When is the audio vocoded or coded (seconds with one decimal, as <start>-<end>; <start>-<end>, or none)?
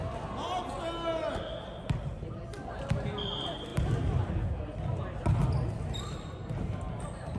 5.4-7.0